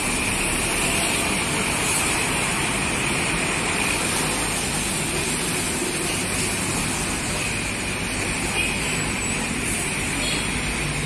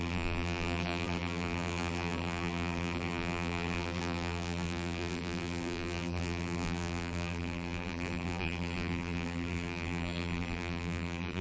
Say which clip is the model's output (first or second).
second